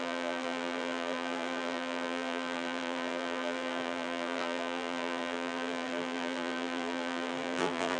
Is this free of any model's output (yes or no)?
no